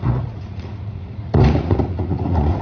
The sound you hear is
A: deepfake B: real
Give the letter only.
A